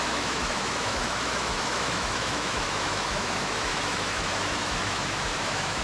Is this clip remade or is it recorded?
remade